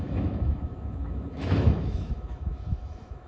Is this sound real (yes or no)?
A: no